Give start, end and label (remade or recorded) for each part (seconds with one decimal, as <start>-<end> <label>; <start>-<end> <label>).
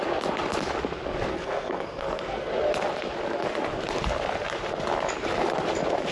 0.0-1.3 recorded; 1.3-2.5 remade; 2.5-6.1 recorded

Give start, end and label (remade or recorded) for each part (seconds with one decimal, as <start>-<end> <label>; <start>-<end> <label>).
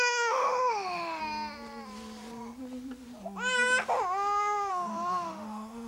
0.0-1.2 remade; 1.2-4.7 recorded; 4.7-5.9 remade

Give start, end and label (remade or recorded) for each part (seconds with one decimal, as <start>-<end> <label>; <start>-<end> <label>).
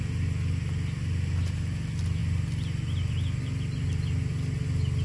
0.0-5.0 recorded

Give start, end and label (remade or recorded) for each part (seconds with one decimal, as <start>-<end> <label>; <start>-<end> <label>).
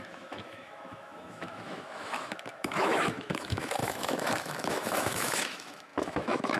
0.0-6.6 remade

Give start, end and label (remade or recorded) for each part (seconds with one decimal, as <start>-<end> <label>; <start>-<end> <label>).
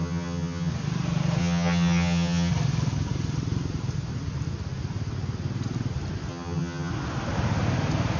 0.0-0.7 remade; 0.7-1.4 recorded; 1.4-2.5 remade; 2.5-6.3 recorded; 6.3-6.9 remade; 6.9-8.2 recorded